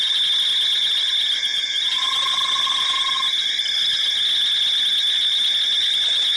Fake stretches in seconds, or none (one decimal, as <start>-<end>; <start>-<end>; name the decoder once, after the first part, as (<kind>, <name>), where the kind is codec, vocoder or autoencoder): none